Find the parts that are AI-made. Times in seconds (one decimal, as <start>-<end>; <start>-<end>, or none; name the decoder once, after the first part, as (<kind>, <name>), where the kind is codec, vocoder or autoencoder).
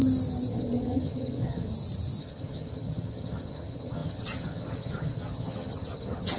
0.5-1.7 (vocoder, HiFi-GAN); 2.2-6.4